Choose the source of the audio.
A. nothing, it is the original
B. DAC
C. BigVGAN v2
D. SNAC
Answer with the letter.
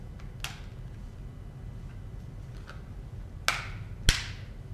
A